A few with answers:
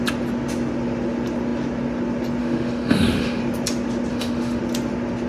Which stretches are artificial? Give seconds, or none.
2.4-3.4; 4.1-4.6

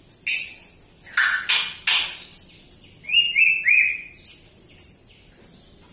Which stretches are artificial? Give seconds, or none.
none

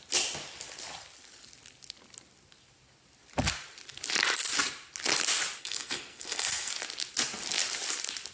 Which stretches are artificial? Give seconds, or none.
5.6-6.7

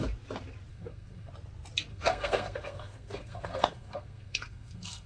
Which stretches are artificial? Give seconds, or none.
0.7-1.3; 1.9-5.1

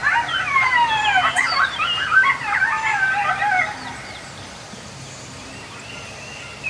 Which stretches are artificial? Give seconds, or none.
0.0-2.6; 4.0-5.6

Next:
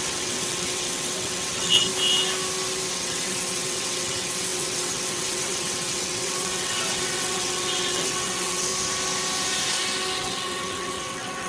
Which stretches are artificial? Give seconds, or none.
0.0-1.9; 2.9-8.7; 10.2-11.5

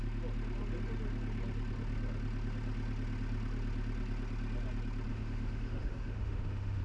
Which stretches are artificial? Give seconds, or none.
5.1-6.8

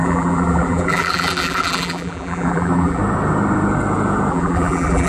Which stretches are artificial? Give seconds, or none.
0.0-3.0; 4.3-5.1